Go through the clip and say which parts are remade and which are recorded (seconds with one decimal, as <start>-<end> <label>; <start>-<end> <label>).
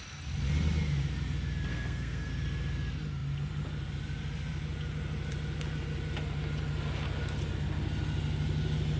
0.0-1.7 recorded; 1.7-2.3 remade; 2.3-9.0 recorded